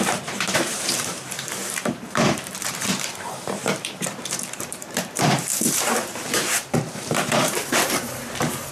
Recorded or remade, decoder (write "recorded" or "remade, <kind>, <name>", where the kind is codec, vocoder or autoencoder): remade, vocoder, BigVGAN v2